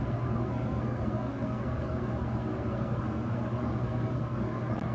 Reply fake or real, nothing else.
fake